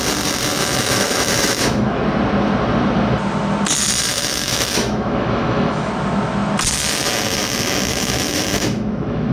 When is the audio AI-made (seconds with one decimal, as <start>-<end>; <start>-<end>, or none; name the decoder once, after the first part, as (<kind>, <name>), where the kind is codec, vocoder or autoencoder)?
0.6-2.0 (autoencoder, DAC-VAE); 4.1-5.9; 7.9-9.3